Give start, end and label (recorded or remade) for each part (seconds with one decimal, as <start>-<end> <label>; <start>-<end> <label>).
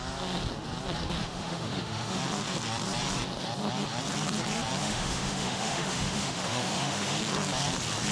0.0-1.2 recorded; 1.2-2.2 remade; 2.2-4.8 recorded; 4.8-7.2 remade; 7.2-8.1 recorded